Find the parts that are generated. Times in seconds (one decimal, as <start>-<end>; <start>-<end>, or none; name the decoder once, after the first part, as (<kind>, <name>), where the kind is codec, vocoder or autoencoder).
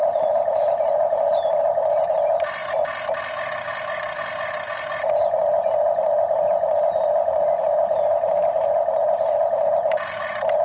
0.0-2.6 (vocoder, BigVGAN v2); 7.6-10.6